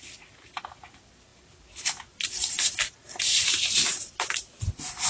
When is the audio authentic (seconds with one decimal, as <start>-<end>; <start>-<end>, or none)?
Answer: 0.0-5.1